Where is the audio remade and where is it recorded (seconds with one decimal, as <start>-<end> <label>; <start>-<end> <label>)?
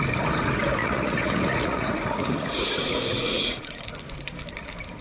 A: 0.0-0.8 recorded; 0.8-3.8 remade; 3.8-5.0 recorded